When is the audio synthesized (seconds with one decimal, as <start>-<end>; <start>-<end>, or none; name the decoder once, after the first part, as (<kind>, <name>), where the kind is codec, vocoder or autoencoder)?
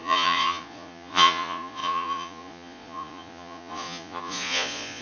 0.0-5.0 (vocoder, Vocos)